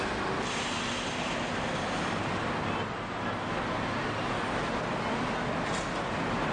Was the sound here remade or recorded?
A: recorded